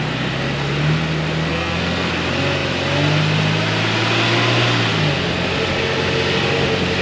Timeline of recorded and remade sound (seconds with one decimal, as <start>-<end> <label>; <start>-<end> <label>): 0.0-1.5 recorded; 1.5-2.1 remade; 2.1-7.0 recorded

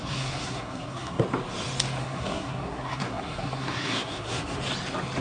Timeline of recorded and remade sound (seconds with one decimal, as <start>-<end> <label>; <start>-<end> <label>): 0.0-1.2 remade; 1.2-2.0 recorded; 2.0-4.6 remade; 4.6-5.2 recorded

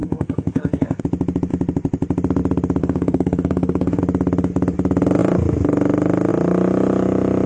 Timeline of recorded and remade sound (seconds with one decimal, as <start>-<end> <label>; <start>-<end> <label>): 0.0-1.0 remade; 1.0-2.8 recorded; 2.8-4.0 remade; 4.0-7.5 recorded

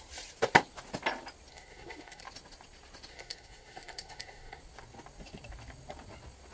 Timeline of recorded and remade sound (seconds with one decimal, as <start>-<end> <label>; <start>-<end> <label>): 0.0-1.5 recorded; 1.5-2.2 remade; 2.2-3.1 recorded; 3.1-4.6 remade; 4.6-6.5 recorded

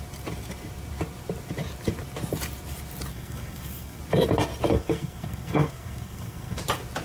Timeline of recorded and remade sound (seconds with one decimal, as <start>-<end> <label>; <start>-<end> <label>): 0.0-3.1 recorded; 3.1-4.0 remade; 4.0-4.7 recorded; 4.7-6.6 remade; 6.6-7.0 recorded

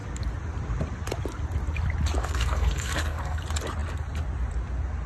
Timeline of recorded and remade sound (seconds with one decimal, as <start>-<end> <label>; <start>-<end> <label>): 0.0-2.2 recorded; 2.2-3.4 remade; 3.4-5.1 recorded

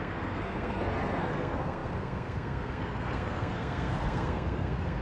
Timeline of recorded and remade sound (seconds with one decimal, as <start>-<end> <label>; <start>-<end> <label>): 0.0-5.0 remade

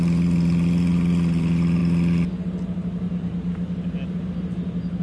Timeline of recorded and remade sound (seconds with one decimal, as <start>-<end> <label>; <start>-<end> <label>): 0.0-5.0 recorded